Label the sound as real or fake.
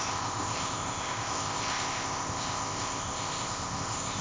fake